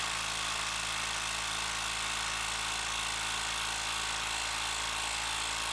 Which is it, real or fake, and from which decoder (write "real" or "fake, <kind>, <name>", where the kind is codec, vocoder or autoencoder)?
real